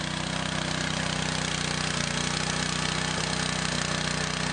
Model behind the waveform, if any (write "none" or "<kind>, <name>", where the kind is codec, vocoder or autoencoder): none